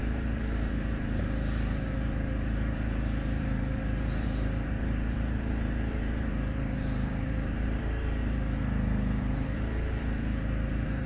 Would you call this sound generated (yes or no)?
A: yes